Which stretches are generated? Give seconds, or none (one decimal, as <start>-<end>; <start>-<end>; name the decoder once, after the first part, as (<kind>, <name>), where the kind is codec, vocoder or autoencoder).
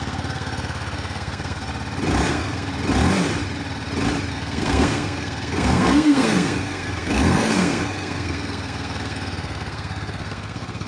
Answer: 0.0-1.7 (codec, SNAC); 2.3-2.7; 4.3-10.9